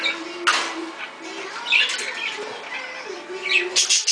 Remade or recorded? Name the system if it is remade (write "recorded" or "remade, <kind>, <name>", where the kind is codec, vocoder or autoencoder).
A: recorded